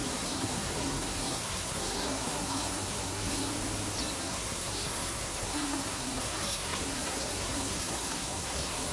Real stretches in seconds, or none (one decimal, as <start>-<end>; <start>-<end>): 3.5-4.2